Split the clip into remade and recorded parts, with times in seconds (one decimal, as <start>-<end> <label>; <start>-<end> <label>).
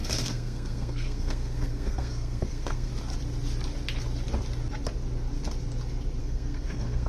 0.0-2.9 remade; 2.9-6.2 recorded; 6.2-7.1 remade